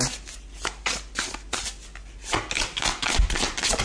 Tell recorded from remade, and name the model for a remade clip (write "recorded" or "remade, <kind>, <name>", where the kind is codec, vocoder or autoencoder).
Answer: recorded